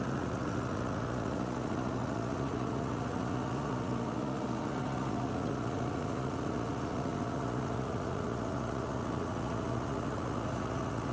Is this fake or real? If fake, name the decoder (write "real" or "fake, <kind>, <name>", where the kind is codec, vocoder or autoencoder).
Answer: fake, vocoder, Vocos